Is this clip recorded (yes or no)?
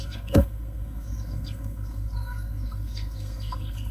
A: no